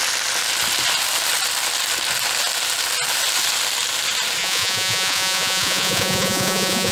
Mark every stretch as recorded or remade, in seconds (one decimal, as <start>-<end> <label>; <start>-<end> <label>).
0.0-4.4 recorded; 4.4-6.9 remade